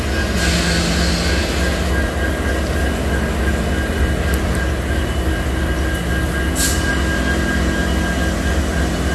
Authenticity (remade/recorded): recorded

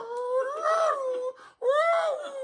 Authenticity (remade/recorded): recorded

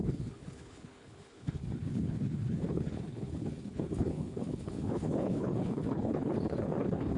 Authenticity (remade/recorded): remade